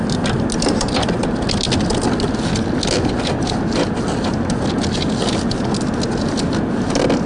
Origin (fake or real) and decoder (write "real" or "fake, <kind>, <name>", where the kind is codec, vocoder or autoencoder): real